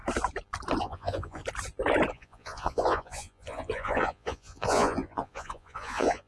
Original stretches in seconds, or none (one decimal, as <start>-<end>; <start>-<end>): 0.0-0.8; 1.4-2.1